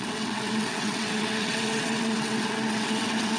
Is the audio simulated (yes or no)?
yes